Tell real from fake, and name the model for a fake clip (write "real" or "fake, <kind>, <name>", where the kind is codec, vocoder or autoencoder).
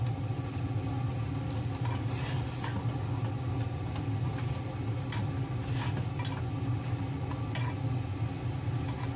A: real